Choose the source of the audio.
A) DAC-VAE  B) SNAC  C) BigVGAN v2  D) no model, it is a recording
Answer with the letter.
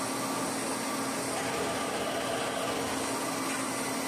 D